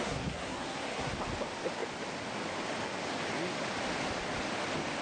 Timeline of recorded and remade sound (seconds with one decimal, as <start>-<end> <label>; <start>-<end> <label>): 0.0-1.1 remade; 1.1-5.0 recorded